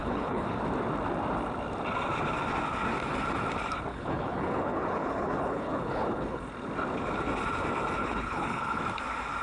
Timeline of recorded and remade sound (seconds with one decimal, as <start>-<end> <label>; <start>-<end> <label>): 0.0-0.6 remade; 0.6-3.9 recorded; 3.9-6.4 remade; 6.4-8.0 recorded; 8.0-8.8 remade; 8.8-9.4 recorded